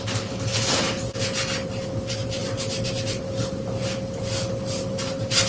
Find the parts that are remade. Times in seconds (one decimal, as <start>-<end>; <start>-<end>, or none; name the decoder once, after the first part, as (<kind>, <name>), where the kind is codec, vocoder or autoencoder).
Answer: none